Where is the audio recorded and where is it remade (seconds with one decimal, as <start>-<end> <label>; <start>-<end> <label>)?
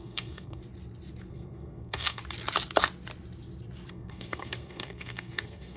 0.0-0.6 remade; 0.6-1.3 recorded; 1.3-2.2 remade; 2.2-3.9 recorded; 3.9-5.8 remade